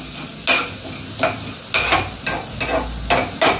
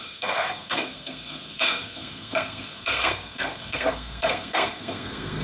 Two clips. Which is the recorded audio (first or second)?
first